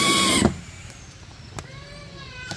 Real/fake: fake